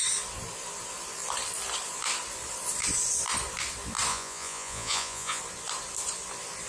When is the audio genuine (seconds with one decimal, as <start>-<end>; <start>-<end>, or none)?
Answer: 0.0-4.1; 5.4-6.7